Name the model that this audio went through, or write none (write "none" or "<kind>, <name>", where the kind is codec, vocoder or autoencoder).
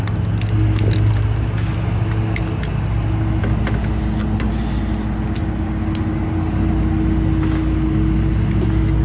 none